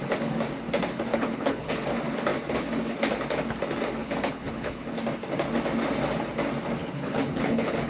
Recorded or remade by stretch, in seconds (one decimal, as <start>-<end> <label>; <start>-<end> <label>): 0.0-1.1 recorded; 1.1-1.7 remade; 1.7-4.0 recorded; 4.0-4.9 remade; 4.9-6.8 recorded; 6.8-7.9 remade